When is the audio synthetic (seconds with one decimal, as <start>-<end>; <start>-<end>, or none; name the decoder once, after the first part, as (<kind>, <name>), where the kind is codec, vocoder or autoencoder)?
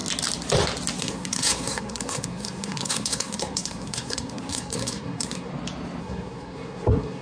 1.0-5.5 (codec, SNAC); 6.0-7.2